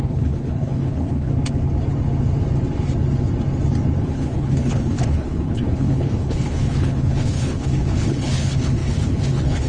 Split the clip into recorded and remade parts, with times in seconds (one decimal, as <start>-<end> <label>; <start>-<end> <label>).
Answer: 0.0-1.3 remade; 1.3-4.0 recorded; 4.0-9.7 remade